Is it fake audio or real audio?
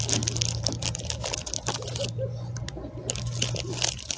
real